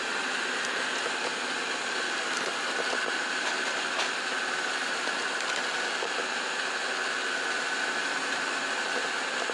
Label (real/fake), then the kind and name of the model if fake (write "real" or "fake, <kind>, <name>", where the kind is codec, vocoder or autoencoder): real